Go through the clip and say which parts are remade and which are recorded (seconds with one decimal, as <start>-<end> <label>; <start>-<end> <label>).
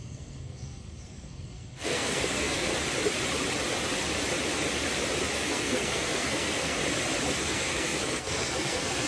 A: 0.0-2.7 remade; 2.7-5.3 recorded; 5.3-6.8 remade; 6.8-7.4 recorded; 7.4-9.1 remade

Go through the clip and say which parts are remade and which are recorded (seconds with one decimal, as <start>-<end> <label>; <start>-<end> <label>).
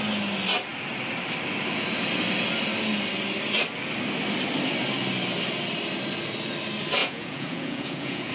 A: 0.0-7.0 recorded; 7.0-8.3 remade